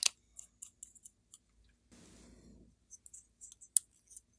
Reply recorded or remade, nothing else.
recorded